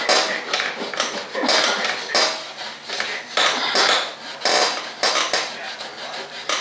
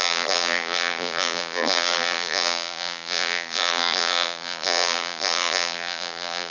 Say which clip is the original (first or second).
first